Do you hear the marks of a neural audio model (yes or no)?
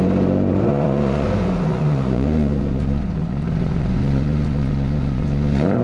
yes